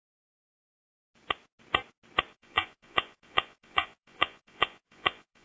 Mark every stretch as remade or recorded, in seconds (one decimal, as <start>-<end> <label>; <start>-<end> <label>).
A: 0.0-2.3 recorded; 2.3-5.4 remade